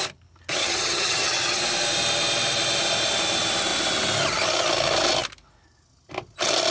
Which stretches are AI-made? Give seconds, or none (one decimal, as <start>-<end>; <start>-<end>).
0.6-1.6